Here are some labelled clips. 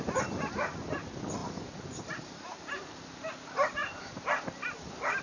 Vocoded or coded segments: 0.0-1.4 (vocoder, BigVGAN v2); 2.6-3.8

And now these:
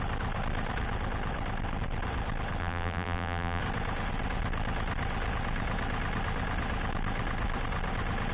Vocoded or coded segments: 2.6-3.6 (vocoder, BigVGAN v2)

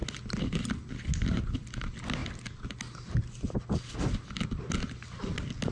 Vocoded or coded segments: none

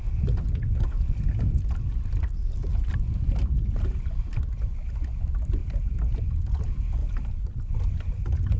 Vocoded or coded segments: 5.6-6.2 (vocoder, BigVGAN v2); 7.0-7.8